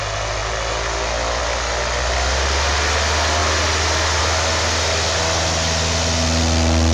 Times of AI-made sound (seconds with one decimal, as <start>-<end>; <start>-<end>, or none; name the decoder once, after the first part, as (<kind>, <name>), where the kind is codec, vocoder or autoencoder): none